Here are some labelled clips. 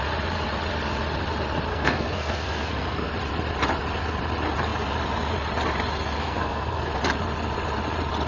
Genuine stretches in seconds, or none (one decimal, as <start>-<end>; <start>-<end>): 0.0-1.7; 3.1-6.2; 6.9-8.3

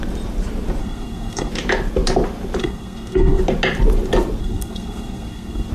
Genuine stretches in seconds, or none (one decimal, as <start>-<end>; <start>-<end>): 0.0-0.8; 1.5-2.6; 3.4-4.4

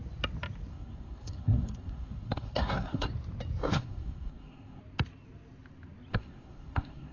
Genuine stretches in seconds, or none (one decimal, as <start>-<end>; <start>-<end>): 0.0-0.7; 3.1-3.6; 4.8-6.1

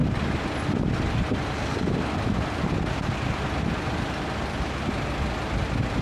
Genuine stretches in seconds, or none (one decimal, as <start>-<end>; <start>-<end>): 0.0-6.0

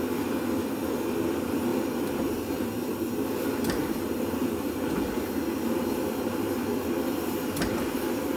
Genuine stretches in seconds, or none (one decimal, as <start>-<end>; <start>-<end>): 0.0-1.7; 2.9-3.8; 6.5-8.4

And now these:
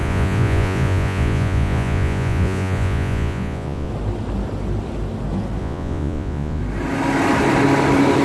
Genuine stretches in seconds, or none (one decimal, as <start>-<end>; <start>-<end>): 3.9-5.6; 6.6-8.2